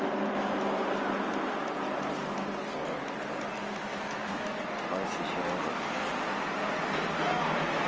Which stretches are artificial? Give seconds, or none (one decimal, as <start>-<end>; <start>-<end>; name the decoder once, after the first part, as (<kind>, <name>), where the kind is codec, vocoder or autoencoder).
3.9-4.6 (autoencoder, DAC-VAE)